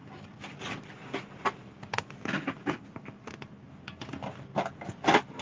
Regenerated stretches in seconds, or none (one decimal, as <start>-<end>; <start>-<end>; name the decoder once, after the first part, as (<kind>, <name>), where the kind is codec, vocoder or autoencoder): none